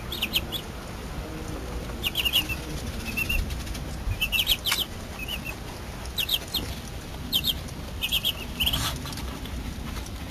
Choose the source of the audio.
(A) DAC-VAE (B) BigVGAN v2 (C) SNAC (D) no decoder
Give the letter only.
D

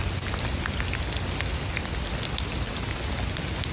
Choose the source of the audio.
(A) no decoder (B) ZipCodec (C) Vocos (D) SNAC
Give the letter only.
A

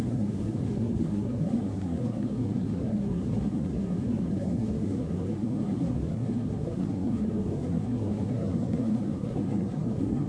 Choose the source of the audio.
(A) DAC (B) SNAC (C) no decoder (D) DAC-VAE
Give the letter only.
B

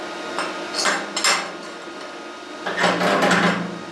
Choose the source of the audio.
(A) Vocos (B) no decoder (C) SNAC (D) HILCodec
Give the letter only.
B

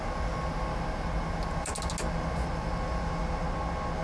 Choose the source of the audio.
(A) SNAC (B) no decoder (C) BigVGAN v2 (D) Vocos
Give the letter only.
B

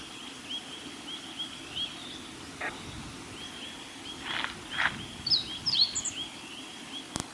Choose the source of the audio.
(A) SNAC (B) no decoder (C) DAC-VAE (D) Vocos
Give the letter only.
B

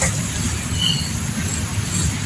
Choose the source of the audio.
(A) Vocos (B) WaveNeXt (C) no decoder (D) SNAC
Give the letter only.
C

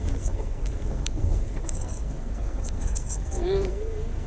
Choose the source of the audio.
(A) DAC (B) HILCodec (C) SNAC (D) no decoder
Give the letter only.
C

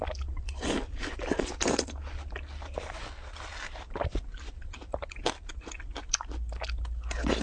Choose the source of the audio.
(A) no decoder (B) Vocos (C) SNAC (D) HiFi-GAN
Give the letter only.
A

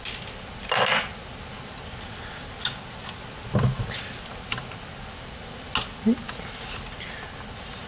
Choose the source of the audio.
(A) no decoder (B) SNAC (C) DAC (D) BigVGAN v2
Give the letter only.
A